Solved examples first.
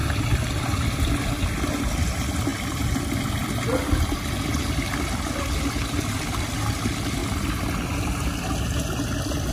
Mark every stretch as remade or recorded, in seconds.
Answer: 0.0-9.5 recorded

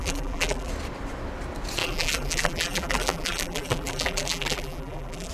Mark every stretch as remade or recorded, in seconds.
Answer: 0.0-0.7 remade; 0.7-1.8 recorded; 1.8-5.3 remade